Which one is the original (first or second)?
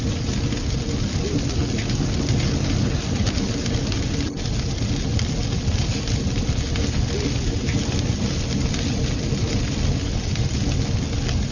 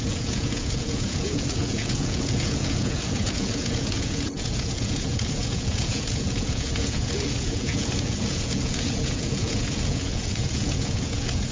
first